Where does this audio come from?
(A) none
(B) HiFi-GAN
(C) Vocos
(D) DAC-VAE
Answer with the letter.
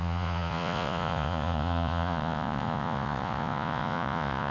C